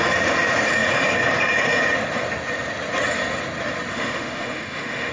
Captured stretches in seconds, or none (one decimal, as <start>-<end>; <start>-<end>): 0.0-3.9